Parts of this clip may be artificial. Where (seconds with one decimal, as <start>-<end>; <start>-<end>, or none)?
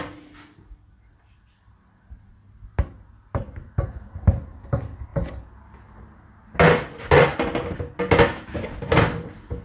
none